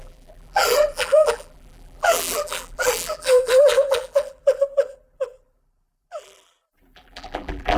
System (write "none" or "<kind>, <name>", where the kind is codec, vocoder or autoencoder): vocoder, BigVGAN v2